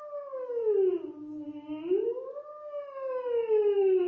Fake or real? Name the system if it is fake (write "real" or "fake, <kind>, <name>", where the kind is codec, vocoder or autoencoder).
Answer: real